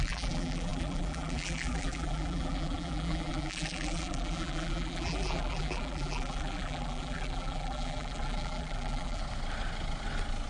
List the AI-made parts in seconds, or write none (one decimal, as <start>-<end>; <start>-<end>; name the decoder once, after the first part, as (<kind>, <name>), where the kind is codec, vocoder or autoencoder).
0.0-9.2 (vocoder, BigVGAN v2)